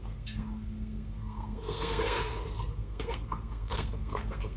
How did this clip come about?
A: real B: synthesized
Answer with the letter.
B